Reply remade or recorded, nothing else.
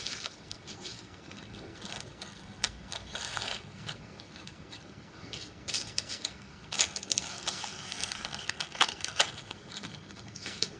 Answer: remade